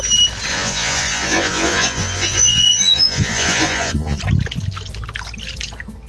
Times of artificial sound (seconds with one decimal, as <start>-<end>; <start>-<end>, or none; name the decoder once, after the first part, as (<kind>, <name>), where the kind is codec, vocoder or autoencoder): 0.5-4.2 (vocoder, Vocos)